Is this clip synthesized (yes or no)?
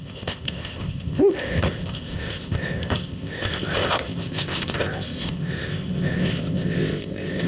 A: yes